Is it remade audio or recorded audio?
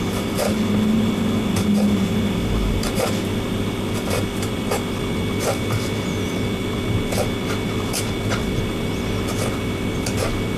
recorded